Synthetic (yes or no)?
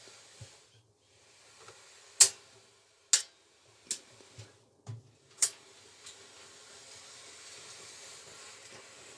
no